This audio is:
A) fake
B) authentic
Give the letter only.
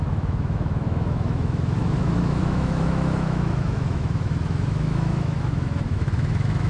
A